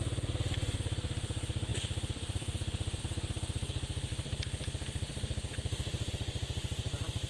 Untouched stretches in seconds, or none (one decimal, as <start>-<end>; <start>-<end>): 0.0-1.7; 3.0-4.1; 6.1-7.3